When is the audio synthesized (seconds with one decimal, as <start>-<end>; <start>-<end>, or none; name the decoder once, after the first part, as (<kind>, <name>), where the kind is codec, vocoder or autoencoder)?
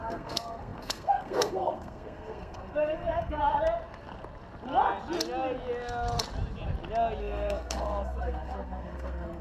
0.0-3.4 (codec, SNAC); 7.2-9.4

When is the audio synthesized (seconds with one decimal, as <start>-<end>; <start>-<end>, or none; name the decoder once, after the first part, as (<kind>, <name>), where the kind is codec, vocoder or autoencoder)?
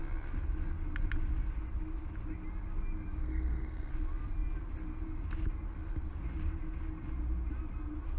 3.2-3.9 (codec, SNAC)